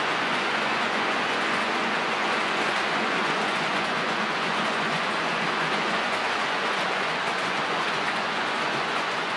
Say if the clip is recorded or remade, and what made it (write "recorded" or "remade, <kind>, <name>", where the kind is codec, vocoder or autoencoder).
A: remade, vocoder, Vocos